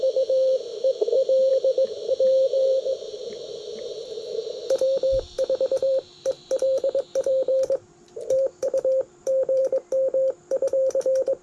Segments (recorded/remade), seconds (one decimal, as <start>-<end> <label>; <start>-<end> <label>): 0.0-9.6 remade; 9.6-10.5 recorded; 10.5-11.4 remade